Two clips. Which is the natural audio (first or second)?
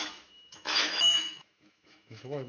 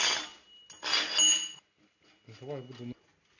second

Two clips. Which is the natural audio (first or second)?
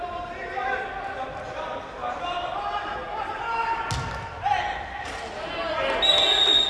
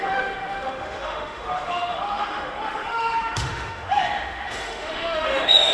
first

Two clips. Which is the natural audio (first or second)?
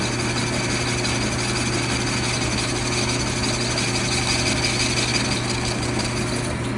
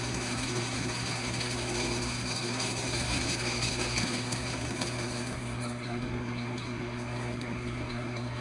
first